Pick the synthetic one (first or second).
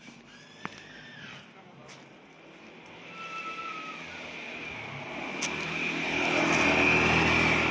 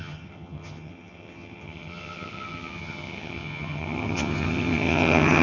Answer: second